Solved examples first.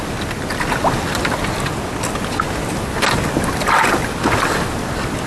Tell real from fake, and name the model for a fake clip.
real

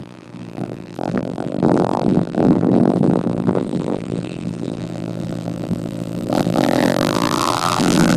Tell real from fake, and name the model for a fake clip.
fake, vocoder, BigVGAN v2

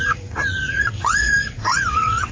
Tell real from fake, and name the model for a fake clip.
fake, vocoder, WaveNeXt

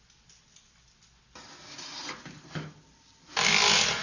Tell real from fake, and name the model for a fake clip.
real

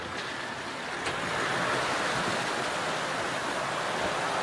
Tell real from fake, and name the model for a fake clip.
real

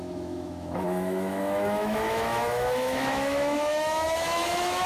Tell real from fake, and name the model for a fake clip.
fake, autoencoder, DAC-VAE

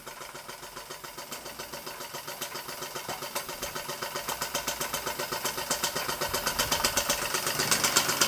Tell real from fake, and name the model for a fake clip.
real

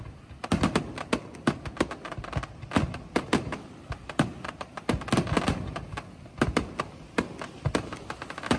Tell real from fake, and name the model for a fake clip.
real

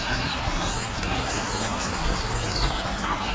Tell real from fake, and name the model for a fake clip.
fake, codec, SNAC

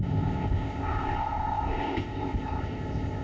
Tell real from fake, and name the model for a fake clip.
fake, codec, ZipCodec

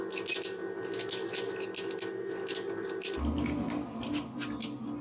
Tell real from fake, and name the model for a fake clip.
real